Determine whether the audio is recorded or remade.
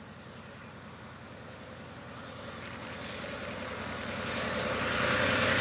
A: recorded